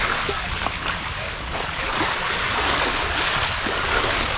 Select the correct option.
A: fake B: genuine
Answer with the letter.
A